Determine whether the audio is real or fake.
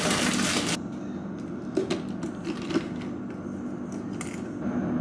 real